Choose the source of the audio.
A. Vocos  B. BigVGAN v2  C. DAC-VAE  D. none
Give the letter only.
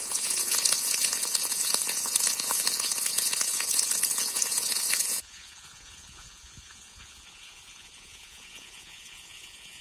A